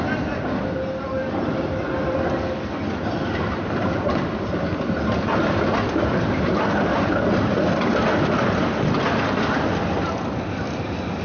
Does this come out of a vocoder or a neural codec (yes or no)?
no